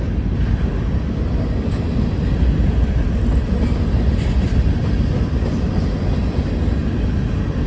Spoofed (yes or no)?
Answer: no